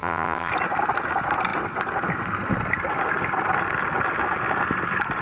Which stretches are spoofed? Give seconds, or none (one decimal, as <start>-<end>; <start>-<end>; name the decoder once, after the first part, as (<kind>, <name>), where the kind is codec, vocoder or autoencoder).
0.0-0.5 (vocoder, HiFi-GAN)